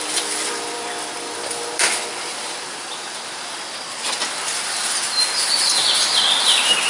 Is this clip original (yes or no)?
no